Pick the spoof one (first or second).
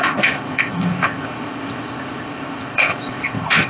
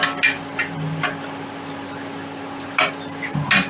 first